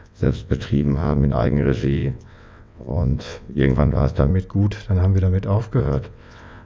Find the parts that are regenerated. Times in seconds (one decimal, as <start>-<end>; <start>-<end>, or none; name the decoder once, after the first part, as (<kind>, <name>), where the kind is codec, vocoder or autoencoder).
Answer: 0.0-4.3 (vocoder, WaveNeXt); 5.8-6.7